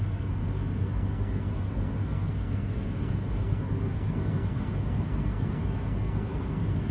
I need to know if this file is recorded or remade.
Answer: remade